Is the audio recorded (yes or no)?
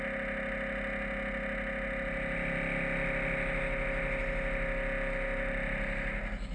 yes